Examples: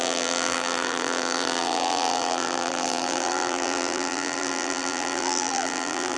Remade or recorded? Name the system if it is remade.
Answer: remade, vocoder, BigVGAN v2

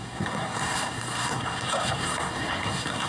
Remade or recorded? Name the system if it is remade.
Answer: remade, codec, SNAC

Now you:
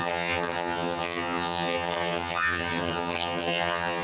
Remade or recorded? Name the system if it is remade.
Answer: remade, vocoder, HiFi-GAN